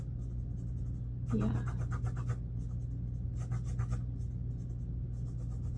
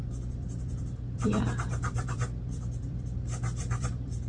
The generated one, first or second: second